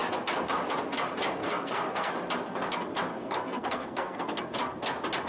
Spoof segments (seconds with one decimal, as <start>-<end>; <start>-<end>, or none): 1.4-2.1; 3.1-4.4